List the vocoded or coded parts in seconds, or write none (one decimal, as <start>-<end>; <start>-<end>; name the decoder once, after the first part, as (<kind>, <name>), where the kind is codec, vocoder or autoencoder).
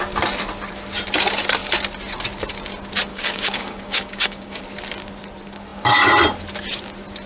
3.1-4.6 (codec, DAC)